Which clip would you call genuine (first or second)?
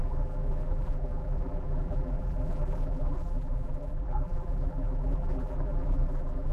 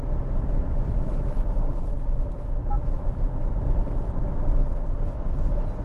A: second